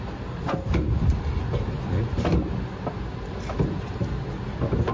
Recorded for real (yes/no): yes